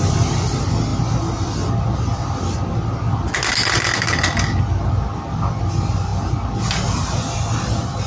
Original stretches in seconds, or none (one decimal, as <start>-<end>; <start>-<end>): 0.0-8.1